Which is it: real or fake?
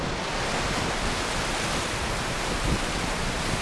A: real